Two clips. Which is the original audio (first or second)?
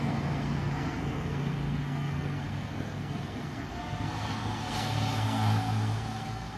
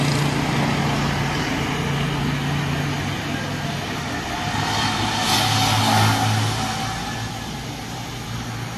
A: second